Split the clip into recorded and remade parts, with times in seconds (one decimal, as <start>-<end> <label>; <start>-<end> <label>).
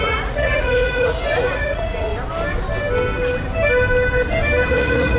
0.0-2.1 remade; 2.1-4.7 recorded; 4.7-5.2 remade